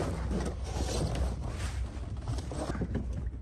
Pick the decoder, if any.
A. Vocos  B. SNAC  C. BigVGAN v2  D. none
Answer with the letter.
D